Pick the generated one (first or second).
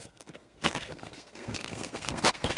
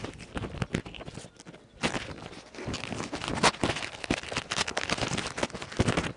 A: first